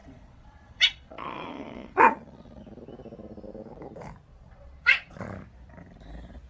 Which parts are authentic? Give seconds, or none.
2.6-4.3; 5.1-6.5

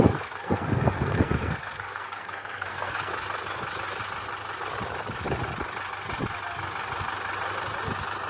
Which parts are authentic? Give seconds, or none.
3.1-8.3

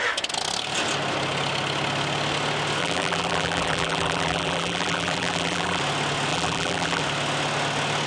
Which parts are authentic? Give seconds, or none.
0.0-2.8; 5.8-6.3; 7.0-8.1